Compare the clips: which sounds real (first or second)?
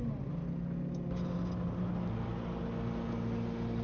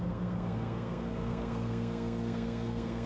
first